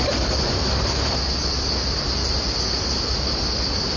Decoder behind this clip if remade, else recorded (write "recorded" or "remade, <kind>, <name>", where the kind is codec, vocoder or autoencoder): recorded